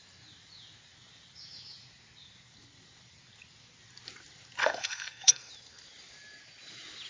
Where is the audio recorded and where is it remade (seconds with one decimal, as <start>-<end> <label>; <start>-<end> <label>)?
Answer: 0.0-4.6 recorded; 4.6-5.5 remade; 5.5-7.1 recorded